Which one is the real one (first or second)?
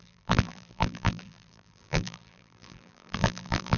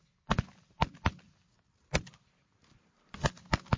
second